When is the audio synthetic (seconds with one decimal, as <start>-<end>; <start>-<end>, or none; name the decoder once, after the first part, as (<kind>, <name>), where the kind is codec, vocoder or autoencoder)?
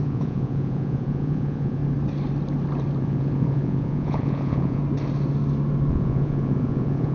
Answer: 0.0-1.8 (vocoder, Vocos); 3.0-4.8; 5.9-7.1